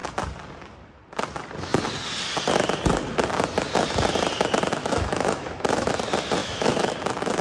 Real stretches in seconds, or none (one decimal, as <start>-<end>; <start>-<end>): 0.0-4.8; 5.9-6.4; 6.9-7.4